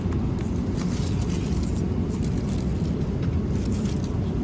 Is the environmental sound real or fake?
real